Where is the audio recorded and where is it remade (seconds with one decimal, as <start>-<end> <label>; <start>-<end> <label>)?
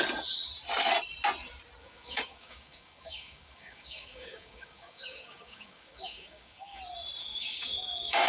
0.0-1.8 recorded; 1.8-6.8 remade; 6.8-7.2 recorded; 7.2-8.3 remade